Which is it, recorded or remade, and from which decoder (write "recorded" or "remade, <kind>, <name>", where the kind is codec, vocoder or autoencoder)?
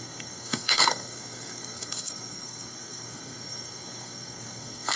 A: remade, codec, SNAC